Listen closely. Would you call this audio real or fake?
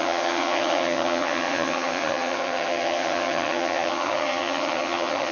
fake